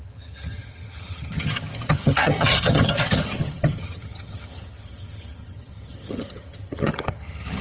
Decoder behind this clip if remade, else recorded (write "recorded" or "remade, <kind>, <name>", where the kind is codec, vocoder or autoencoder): remade, vocoder, HiFi-GAN